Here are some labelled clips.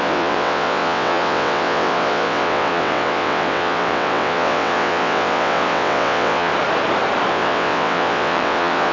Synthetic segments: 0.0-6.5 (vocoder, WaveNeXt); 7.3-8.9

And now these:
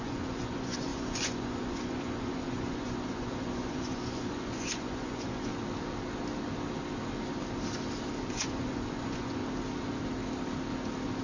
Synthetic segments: 0.0-5.5 (vocoder, Vocos); 8.3-9.4

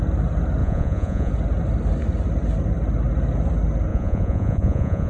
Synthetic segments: 0.6-1.3 (vocoder, Vocos); 3.9-5.1

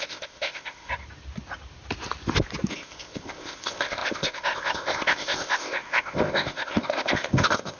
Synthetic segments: 0.0-0.9 (codec, ZipCodec); 2.7-7.8

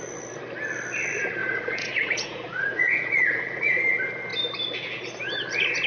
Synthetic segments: 1.4-3.8 (vocoder, Vocos)

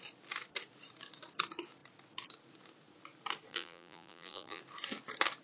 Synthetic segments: 3.5-4.6 (vocoder, BigVGAN v2)